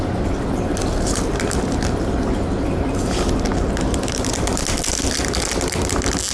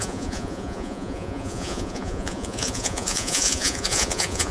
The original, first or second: first